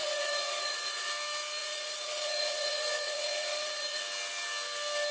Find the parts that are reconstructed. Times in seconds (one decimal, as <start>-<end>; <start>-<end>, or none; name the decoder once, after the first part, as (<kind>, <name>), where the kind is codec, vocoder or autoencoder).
0.0-1.1 (vocoder, Vocos); 1.6-4.0